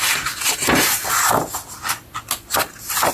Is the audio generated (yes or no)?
no